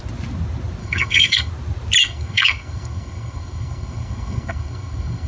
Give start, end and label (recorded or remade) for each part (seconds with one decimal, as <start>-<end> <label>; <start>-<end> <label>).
0.0-0.8 recorded; 0.8-1.5 remade; 1.5-2.0 recorded; 2.0-5.3 remade